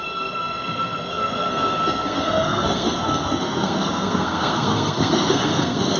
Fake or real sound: fake